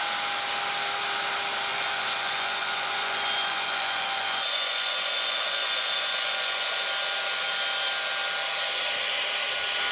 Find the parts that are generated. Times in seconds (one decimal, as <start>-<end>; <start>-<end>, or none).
1.7-6.8

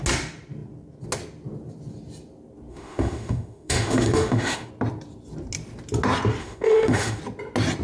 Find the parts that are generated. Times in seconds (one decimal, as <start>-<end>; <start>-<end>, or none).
2.7-4.7; 6.4-7.2

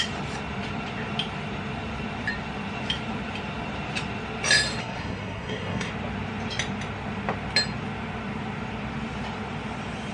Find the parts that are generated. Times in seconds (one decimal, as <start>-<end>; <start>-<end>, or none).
4.8-5.9